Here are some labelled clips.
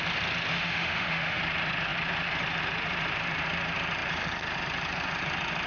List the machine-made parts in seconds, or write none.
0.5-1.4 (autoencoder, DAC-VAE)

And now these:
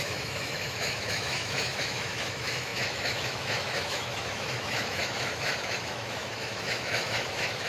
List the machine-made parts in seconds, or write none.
0.0-7.7 (autoencoder, DAC-VAE)

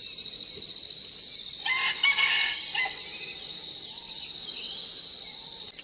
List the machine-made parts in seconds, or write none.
none

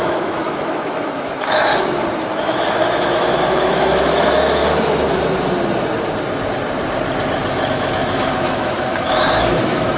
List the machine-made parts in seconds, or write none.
0.0-1.7 (autoencoder, DAC-VAE); 2.2-4.6; 7.7-10.0